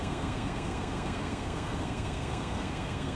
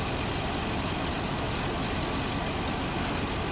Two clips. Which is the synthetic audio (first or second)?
first